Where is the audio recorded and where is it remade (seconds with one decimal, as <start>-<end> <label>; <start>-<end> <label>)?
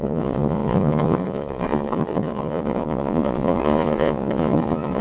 0.0-5.0 remade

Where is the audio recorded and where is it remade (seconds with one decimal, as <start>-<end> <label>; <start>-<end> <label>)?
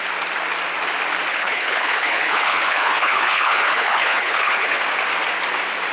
0.0-1.3 recorded; 1.3-4.8 remade; 4.8-5.9 recorded